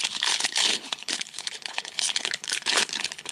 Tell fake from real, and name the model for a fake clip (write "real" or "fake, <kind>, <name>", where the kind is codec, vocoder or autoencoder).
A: fake, codec, HILCodec